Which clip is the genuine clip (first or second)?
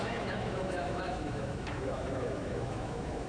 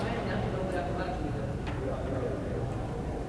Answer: second